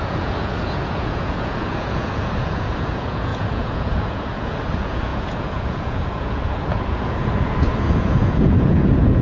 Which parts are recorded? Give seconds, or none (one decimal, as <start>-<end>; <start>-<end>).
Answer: none